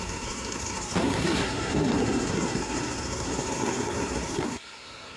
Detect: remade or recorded remade